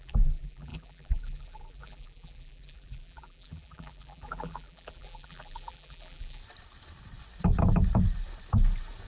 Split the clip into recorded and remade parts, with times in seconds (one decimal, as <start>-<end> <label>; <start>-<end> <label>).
0.0-6.4 remade; 6.4-9.1 recorded